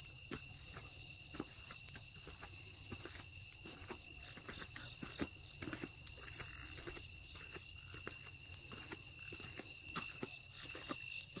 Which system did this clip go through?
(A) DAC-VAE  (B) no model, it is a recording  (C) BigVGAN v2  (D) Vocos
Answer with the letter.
C